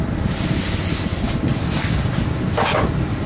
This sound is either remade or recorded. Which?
recorded